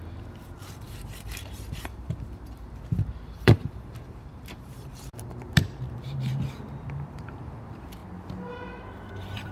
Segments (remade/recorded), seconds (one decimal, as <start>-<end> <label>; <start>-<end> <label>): 0.0-8.0 remade; 8.0-9.1 recorded; 9.1-9.5 remade